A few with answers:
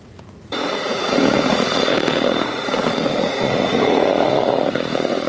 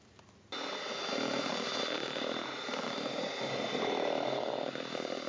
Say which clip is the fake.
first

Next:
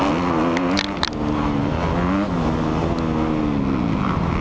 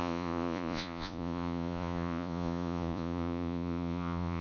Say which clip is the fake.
second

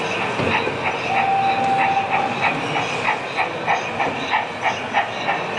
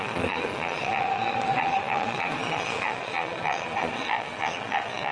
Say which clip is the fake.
second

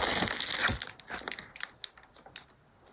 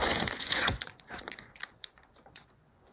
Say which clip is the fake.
second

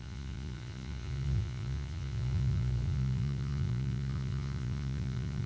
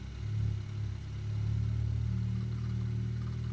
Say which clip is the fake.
first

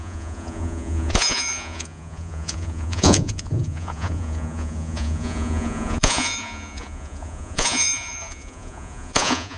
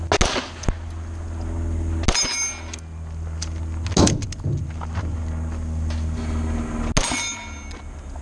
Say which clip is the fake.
first